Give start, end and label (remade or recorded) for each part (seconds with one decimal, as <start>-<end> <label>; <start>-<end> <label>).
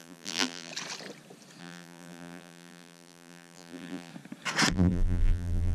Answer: 0.0-0.7 remade; 0.7-1.6 recorded; 1.6-4.1 remade; 4.1-4.7 recorded; 4.7-5.7 remade